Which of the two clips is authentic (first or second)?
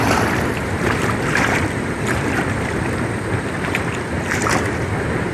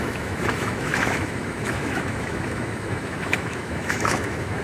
first